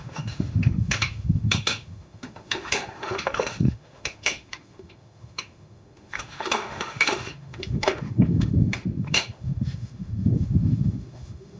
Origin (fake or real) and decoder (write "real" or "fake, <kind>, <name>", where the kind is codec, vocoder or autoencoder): fake, autoencoder, DAC-VAE